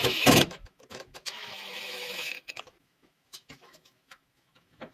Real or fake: fake